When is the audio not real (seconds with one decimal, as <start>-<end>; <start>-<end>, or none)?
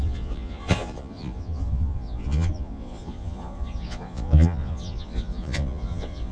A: 0.0-6.3